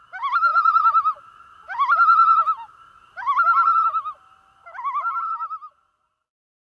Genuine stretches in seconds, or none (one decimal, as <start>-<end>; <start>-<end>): 0.0-6.6